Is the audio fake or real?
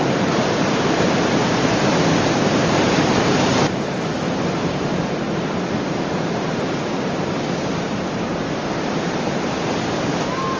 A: fake